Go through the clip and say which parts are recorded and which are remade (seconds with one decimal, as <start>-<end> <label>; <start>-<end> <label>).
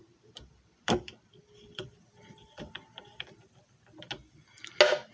0.0-3.0 remade; 3.0-5.1 recorded